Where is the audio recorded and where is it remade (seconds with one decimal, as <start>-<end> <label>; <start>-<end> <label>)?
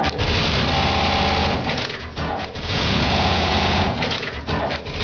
0.0-1.4 recorded; 1.4-4.4 remade; 4.4-5.0 recorded